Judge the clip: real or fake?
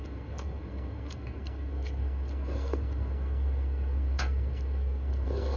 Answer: fake